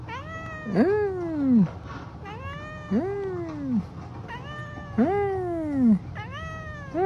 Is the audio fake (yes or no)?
no